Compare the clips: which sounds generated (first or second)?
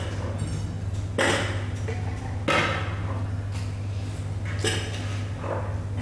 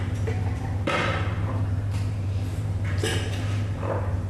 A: second